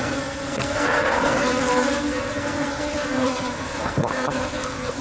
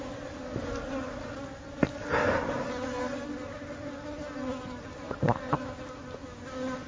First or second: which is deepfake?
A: first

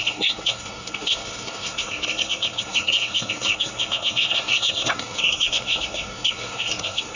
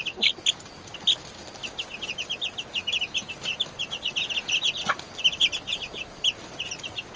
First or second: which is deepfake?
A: first